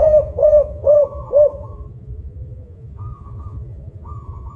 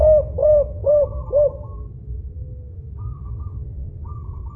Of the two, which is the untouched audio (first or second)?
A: second